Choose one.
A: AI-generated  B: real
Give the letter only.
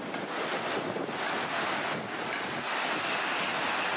B